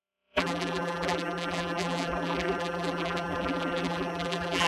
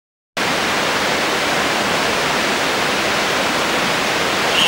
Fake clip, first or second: first